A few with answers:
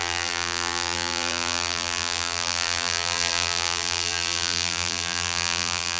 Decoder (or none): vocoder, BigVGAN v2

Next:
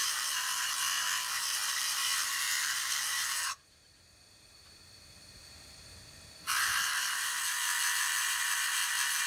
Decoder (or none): vocoder, BigVGAN v2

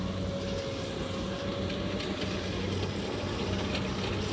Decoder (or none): none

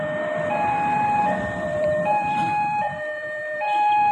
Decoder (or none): vocoder, BigVGAN v2